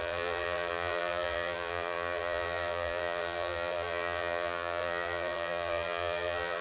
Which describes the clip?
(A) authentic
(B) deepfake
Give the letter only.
B